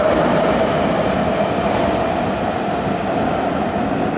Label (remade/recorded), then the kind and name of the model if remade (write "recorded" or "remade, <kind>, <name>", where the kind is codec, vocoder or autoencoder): recorded